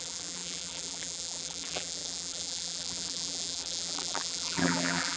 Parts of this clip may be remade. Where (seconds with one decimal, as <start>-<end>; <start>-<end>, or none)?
0.0-5.2